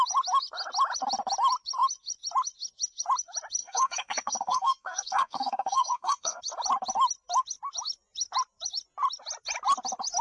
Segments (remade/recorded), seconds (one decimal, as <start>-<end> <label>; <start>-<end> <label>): 0.0-3.6 recorded; 3.6-6.4 remade; 6.4-10.2 recorded